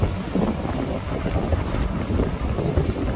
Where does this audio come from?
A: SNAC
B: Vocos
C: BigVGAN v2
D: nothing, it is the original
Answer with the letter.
D